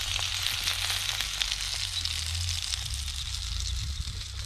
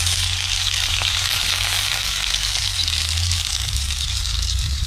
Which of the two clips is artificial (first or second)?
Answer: second